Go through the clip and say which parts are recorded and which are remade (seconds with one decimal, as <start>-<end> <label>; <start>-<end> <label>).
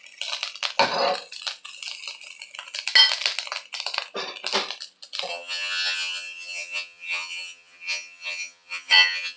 0.0-5.3 recorded; 5.3-9.4 remade